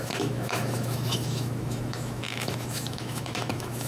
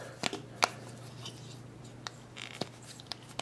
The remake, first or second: first